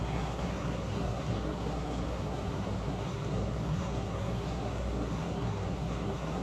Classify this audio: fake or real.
fake